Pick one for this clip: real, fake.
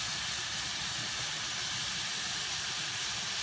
real